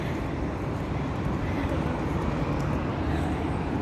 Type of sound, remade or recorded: remade